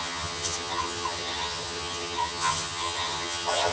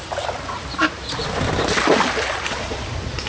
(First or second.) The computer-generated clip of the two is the first